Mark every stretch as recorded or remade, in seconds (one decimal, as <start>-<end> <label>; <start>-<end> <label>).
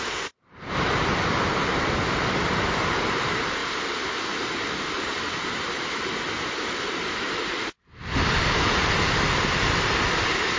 0.0-10.6 remade